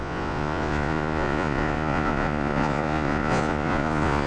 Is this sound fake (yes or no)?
yes